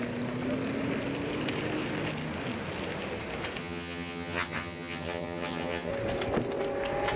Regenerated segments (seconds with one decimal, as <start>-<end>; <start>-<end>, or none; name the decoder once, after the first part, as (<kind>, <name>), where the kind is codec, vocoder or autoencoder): 3.6-5.9 (vocoder, HiFi-GAN)